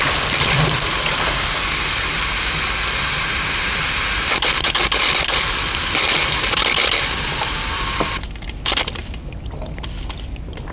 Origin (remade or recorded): recorded